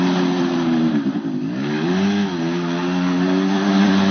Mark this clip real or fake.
real